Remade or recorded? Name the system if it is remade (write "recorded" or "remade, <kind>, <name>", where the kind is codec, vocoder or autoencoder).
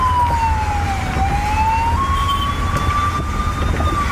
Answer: recorded